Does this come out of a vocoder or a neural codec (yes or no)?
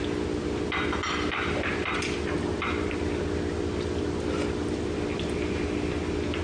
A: no